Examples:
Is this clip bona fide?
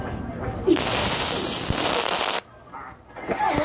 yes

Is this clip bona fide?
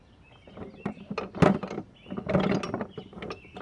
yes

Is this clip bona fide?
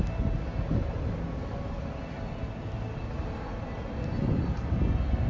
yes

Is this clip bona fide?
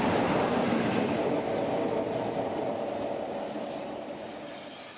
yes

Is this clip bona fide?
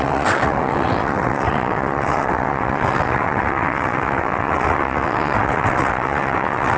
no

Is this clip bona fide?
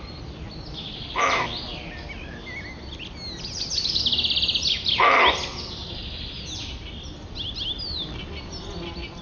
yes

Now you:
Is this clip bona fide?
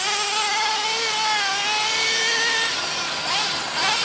yes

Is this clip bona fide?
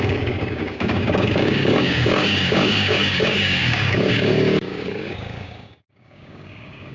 no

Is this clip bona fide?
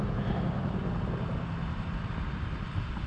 yes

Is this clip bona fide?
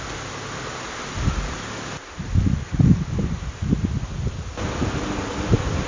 yes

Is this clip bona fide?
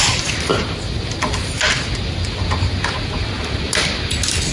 yes